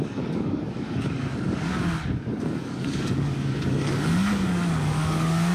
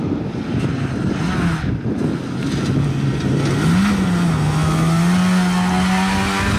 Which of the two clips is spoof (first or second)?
first